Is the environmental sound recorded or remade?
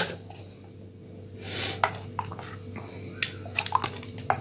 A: recorded